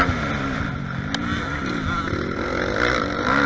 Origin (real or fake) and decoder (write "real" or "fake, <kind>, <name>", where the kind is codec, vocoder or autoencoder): real